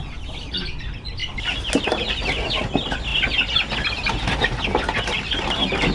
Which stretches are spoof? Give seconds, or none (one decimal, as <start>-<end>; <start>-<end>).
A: none